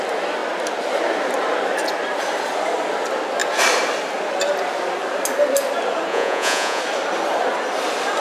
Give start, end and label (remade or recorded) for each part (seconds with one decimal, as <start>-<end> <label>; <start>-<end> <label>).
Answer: 0.0-6.1 recorded; 6.1-6.8 remade; 6.8-8.2 recorded